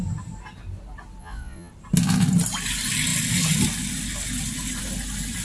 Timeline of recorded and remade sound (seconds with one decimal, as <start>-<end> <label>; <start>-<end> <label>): 0.0-1.2 recorded; 1.2-1.7 remade; 1.7-5.4 recorded

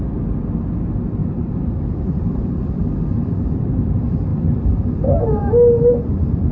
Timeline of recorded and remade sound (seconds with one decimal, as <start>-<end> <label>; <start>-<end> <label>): 0.0-1.2 recorded; 1.2-2.9 remade; 2.9-4.3 recorded; 4.3-5.5 remade; 5.5-6.5 recorded